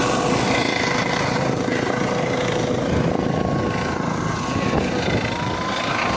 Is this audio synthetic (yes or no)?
no